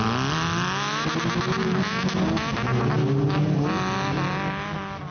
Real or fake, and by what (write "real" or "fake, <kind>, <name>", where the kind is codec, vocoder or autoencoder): real